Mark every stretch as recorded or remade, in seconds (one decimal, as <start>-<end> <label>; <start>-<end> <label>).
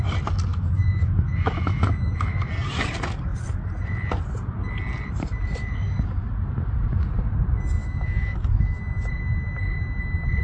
0.0-0.5 recorded; 0.5-2.5 remade; 2.5-7.8 recorded; 7.8-8.8 remade; 8.8-10.4 recorded